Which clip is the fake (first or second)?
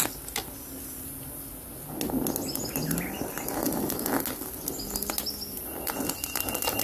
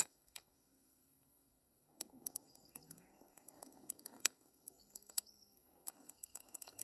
second